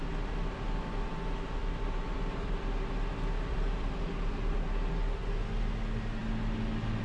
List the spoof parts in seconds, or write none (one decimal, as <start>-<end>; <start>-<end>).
1.6-2.6; 3.5-4.7